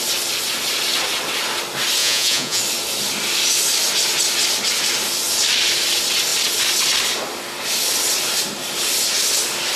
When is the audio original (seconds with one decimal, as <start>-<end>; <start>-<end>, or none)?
0.0-2.0; 2.6-9.8